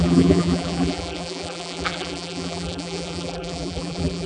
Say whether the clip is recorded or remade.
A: remade